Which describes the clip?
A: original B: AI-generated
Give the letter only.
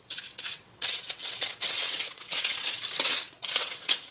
B